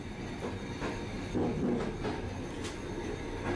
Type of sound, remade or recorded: recorded